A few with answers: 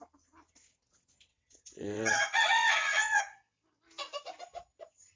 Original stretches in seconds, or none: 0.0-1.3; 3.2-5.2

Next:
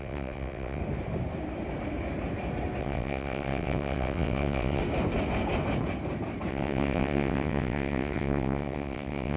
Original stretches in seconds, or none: 0.8-2.8; 4.8-6.5

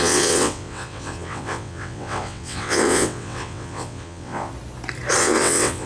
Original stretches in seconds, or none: 4.5-5.2

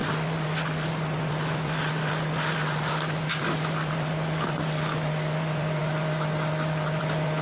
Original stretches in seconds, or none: 0.0-7.4

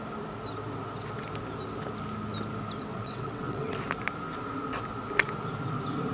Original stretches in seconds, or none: 0.0-2.9; 3.7-6.1

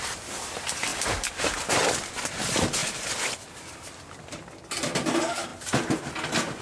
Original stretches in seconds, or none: 0.0-6.6